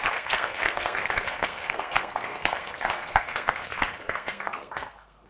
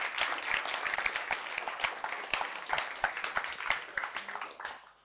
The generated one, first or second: first